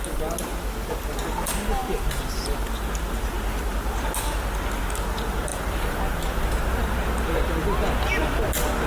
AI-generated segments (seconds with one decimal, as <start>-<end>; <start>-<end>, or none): 5.5-6.6